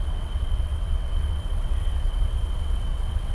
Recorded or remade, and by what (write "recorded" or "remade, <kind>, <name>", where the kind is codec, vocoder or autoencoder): remade, vocoder, WaveNeXt